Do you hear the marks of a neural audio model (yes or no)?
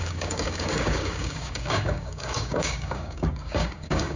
yes